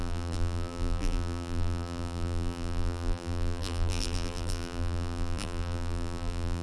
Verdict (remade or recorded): remade